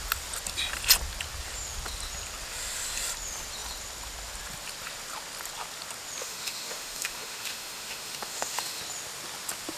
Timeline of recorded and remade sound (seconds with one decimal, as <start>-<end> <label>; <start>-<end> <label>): 0.0-6.2 recorded; 6.2-8.8 remade; 8.8-9.8 recorded